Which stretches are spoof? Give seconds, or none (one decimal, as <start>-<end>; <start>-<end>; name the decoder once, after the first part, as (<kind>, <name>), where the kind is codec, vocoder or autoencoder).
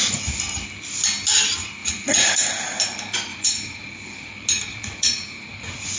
1.8-2.5 (vocoder, Vocos); 3.3-3.8; 4.7-6.0